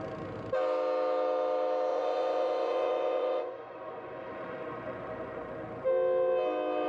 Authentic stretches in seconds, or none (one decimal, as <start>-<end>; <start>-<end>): 0.0-1.9; 5.5-6.9